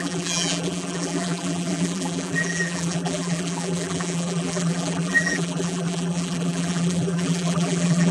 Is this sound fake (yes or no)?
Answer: yes